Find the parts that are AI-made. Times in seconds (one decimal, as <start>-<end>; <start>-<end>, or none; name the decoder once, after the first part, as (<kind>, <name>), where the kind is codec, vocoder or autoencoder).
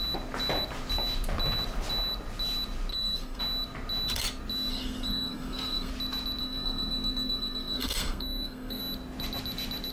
2.9-3.4 (codec, SNAC); 4.7-5.9; 6.4-8.8